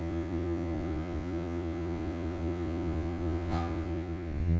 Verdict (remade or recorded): remade